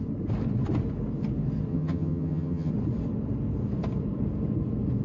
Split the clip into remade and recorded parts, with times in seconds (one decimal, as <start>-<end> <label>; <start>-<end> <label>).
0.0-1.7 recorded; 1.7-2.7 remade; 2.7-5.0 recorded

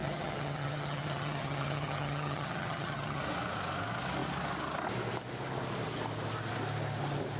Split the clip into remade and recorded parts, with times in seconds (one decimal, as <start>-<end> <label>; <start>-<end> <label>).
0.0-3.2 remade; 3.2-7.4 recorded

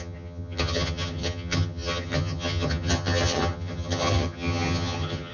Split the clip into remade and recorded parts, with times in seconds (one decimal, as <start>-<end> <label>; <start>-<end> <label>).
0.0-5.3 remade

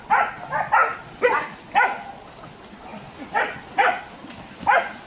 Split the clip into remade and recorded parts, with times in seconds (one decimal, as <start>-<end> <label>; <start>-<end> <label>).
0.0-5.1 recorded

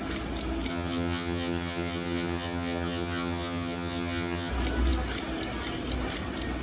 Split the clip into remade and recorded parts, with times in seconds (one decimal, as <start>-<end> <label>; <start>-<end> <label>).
0.0-0.7 recorded; 0.7-4.5 remade; 4.5-6.6 recorded

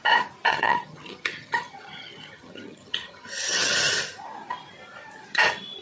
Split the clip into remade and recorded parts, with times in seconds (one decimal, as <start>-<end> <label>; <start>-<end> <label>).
0.0-0.5 recorded; 0.5-4.0 remade; 4.0-5.8 recorded